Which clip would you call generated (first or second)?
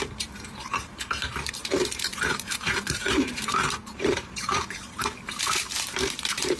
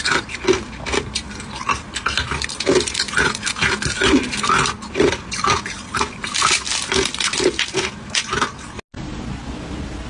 first